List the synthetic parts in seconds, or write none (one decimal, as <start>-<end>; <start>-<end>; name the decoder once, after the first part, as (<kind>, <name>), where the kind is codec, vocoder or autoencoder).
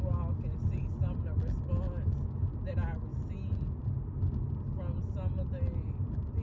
none